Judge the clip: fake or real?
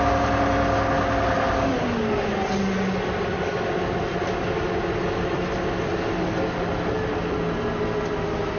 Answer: real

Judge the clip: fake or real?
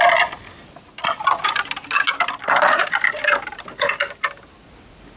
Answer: real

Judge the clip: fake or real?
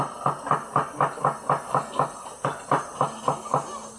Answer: real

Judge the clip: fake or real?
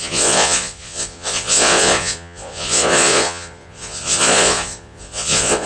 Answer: fake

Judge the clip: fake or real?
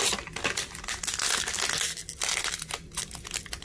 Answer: real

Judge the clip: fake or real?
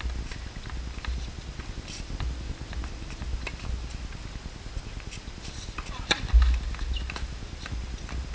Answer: real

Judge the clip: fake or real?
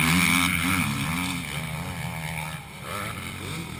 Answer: real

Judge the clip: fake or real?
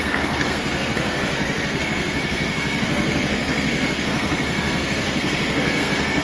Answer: fake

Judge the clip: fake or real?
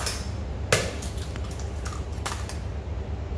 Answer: real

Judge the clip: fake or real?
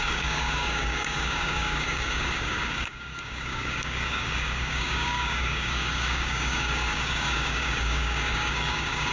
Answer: fake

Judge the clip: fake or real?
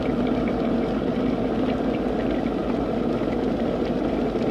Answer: real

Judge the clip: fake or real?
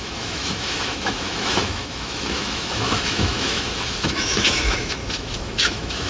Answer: fake